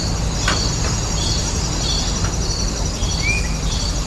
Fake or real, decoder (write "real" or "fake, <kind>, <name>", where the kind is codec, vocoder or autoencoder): real